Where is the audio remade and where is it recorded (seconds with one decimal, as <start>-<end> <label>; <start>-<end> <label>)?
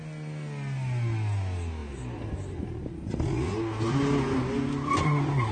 0.0-1.8 recorded; 1.8-2.7 remade; 2.7-5.5 recorded